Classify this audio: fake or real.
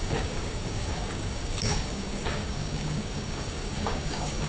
fake